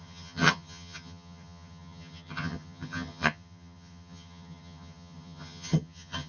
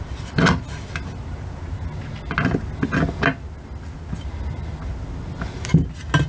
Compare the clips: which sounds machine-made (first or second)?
first